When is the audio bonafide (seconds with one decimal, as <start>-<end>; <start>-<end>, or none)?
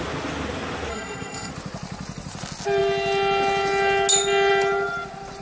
0.0-0.9; 1.5-5.4